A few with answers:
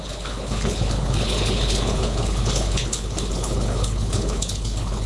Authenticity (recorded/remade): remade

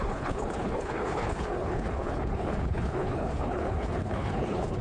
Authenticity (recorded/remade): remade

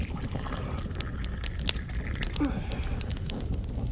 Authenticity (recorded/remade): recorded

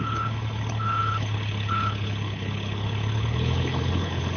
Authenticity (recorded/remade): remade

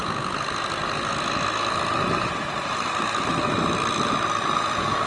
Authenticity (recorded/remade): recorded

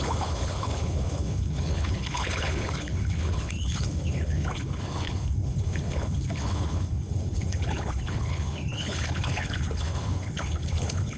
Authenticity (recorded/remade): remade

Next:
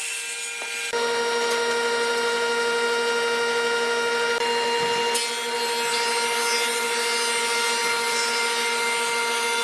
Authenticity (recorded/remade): recorded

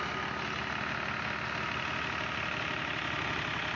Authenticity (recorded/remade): recorded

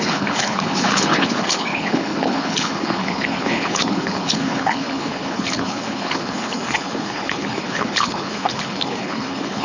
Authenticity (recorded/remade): remade